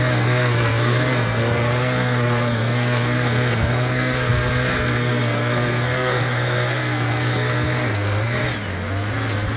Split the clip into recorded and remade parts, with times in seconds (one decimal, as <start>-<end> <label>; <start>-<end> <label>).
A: 0.0-8.4 remade; 8.4-9.6 recorded